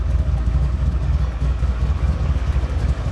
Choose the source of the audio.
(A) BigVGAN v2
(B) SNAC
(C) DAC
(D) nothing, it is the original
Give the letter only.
C